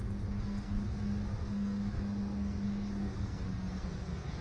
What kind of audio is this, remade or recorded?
remade